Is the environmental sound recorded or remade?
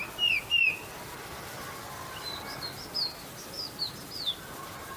recorded